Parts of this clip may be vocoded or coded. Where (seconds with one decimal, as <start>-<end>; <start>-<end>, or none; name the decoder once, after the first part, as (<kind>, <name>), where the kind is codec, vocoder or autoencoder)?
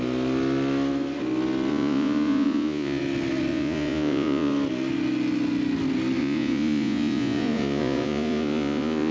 1.7-3.0 (vocoder, Vocos); 3.5-4.5; 6.2-9.1